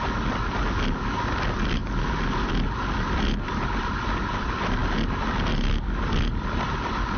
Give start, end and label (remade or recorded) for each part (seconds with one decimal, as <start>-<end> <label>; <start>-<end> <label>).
0.0-7.2 recorded